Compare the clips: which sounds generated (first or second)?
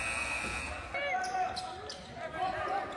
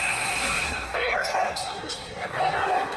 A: second